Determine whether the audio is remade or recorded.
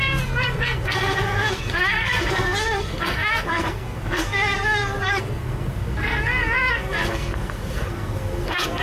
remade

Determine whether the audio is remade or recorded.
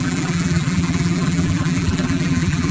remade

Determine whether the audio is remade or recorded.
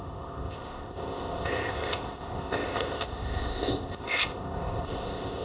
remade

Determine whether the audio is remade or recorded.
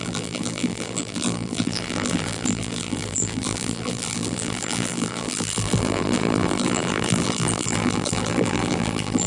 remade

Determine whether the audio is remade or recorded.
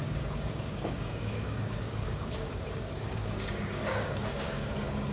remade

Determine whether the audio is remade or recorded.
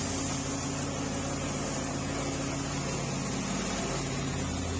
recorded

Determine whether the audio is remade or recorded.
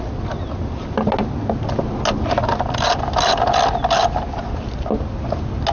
recorded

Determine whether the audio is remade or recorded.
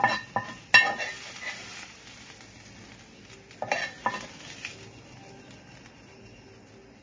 recorded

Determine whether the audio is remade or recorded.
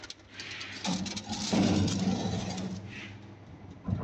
recorded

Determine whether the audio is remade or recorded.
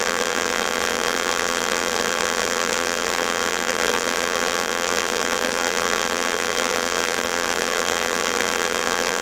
remade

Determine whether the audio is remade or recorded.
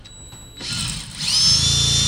recorded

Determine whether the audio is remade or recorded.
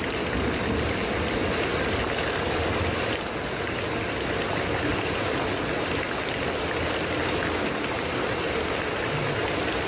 recorded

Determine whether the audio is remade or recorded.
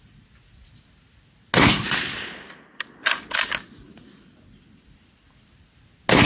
recorded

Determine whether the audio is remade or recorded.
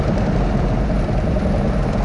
remade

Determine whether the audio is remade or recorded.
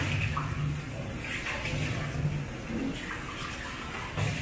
recorded